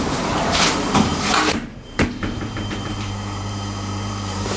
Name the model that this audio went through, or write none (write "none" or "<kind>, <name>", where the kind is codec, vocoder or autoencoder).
vocoder, BigVGAN v2